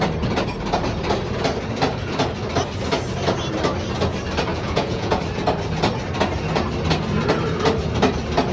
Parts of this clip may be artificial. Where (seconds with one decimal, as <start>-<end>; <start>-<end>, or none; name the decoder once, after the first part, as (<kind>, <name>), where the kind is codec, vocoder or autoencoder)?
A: 4.5-5.2 (vocoder, Vocos)